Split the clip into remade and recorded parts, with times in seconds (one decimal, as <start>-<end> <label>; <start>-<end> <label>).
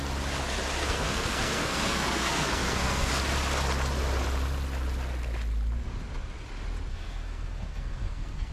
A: 0.0-0.8 recorded; 0.8-3.1 remade; 3.1-6.9 recorded; 6.9-8.5 remade